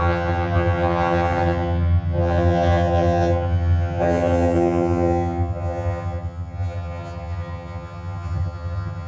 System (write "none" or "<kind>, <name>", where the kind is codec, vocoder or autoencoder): vocoder, HiFi-GAN